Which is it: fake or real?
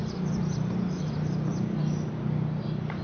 real